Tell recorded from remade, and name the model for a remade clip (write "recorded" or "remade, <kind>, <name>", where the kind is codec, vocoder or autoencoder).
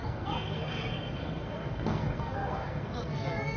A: remade, codec, SNAC